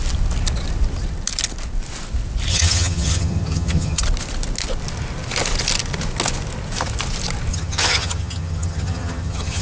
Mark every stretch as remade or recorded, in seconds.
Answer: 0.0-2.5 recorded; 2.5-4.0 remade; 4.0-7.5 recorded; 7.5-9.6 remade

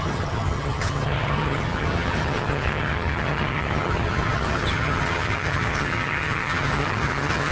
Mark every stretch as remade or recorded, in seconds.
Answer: 0.0-7.5 remade

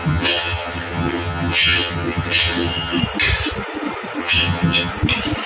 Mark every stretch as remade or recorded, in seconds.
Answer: 0.0-3.0 remade; 3.0-4.2 recorded; 4.2-4.9 remade; 4.9-5.5 recorded

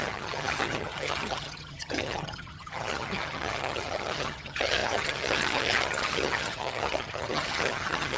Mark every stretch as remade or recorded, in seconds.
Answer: 0.0-8.2 remade

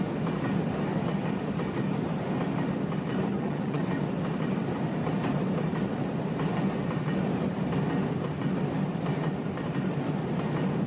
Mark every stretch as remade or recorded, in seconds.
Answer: 0.0-3.3 recorded; 3.3-3.8 remade; 3.8-10.9 recorded

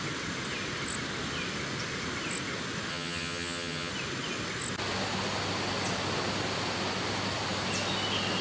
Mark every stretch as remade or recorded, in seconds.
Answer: 0.0-2.9 recorded; 2.9-3.9 remade; 3.9-8.4 recorded

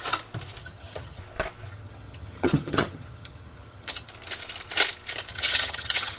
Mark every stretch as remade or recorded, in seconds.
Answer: 0.0-0.6 recorded; 0.6-1.2 remade; 1.2-1.7 recorded; 1.7-4.1 remade; 4.1-5.3 recorded; 5.3-6.2 remade

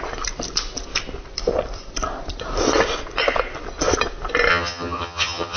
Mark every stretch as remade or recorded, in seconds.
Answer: 0.0-4.5 recorded; 4.5-5.6 remade